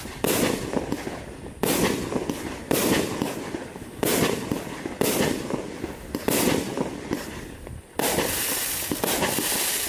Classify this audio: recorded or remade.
recorded